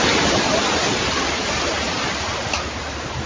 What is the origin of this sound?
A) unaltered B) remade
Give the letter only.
B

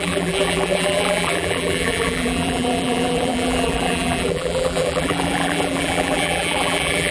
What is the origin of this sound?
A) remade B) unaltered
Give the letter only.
A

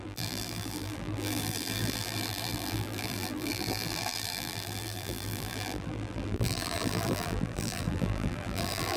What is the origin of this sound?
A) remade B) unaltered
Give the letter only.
A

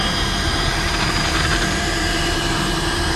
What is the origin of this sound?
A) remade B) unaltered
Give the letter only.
A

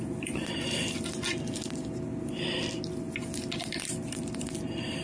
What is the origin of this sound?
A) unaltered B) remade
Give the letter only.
A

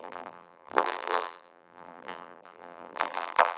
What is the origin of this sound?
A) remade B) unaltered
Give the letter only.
A